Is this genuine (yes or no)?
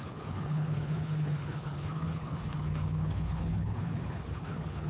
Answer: no